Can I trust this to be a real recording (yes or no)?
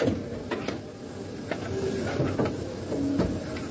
yes